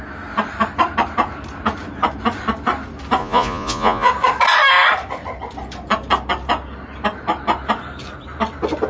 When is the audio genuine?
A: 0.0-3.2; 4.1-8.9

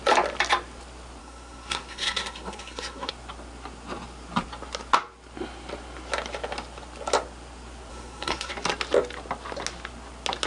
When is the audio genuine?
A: 0.0-1.2; 3.1-7.9; 8.5-10.5

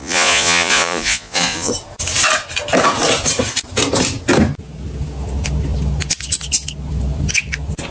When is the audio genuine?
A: 1.7-7.9